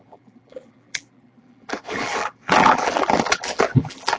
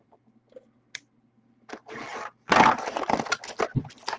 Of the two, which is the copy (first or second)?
first